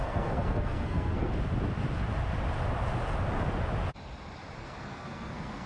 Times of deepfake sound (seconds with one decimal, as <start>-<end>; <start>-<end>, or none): 0.0-1.3; 4.6-5.7